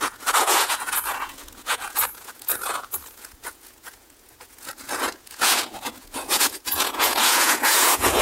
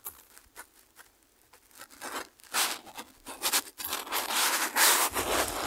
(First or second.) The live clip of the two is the second